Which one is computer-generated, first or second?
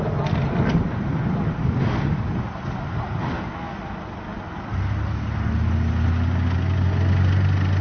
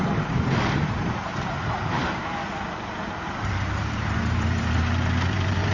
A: second